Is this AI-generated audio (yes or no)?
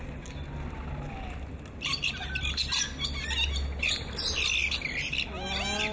no